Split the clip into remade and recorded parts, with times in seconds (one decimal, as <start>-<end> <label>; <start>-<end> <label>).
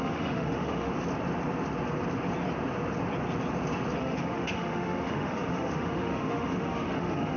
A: 0.0-0.9 remade; 0.9-4.0 recorded; 4.0-7.4 remade